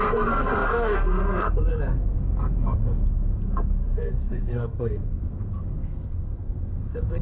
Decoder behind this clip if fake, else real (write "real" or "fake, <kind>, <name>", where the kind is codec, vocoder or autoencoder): fake, codec, SNAC